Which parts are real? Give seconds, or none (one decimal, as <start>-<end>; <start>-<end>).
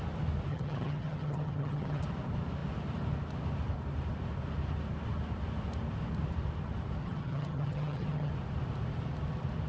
0.0-0.5; 2.0-7.0; 8.3-9.7